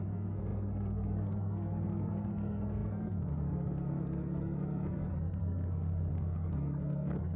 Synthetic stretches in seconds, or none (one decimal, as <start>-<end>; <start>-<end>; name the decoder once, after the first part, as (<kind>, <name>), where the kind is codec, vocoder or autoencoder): 0.0-7.4 (codec, SNAC)